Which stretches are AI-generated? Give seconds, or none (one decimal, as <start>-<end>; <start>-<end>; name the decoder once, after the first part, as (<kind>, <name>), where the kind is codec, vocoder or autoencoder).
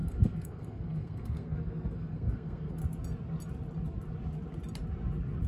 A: 0.0-2.8 (codec, SNAC)